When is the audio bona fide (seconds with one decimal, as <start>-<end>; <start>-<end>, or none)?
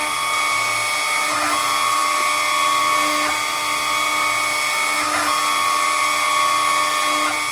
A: 0.0-7.5